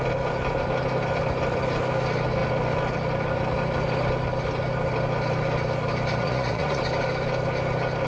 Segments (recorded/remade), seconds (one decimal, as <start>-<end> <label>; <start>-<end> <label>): 0.0-6.2 recorded; 6.2-6.8 remade; 6.8-8.1 recorded

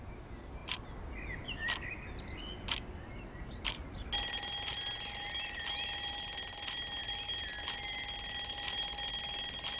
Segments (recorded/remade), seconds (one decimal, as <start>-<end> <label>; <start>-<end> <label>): 0.0-9.8 recorded

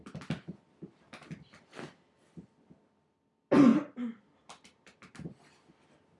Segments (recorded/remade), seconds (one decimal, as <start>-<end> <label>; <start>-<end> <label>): 0.0-6.2 recorded

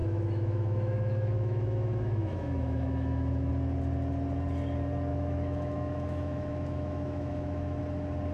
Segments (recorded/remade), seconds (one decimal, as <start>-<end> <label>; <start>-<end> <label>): 0.0-3.5 remade; 3.5-5.1 recorded; 5.1-7.8 remade; 7.8-8.3 recorded

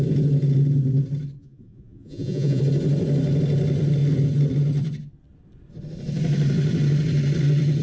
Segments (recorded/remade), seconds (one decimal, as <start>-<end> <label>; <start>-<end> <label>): 0.0-1.4 recorded; 1.4-2.6 remade; 2.6-7.8 recorded

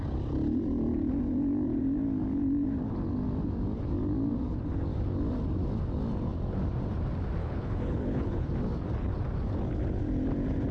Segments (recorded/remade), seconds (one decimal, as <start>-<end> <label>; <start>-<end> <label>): 0.0-7.4 recorded; 7.4-8.5 remade; 8.5-10.7 recorded

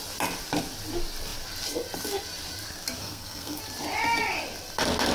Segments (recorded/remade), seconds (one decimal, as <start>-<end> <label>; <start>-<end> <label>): 0.0-3.0 recorded; 3.0-3.6 remade; 3.6-5.1 recorded